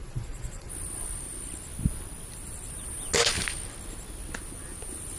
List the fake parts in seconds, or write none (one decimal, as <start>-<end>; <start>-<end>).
0.0-0.7

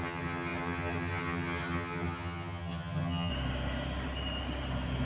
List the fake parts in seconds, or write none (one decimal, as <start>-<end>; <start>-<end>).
0.0-3.3

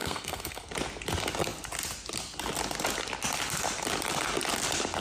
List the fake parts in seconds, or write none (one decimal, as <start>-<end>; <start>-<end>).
0.0-0.7

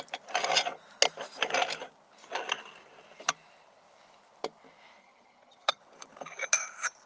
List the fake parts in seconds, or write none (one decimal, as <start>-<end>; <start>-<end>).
5.0-5.8

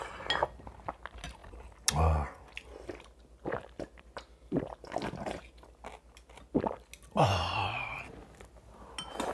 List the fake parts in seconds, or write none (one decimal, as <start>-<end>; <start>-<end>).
none